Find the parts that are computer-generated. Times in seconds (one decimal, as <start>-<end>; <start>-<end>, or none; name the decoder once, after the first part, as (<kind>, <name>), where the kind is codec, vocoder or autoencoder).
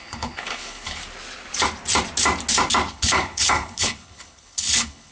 0.0-1.0 (codec, HILCodec); 2.9-5.1